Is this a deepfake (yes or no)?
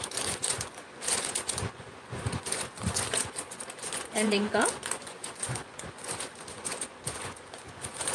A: yes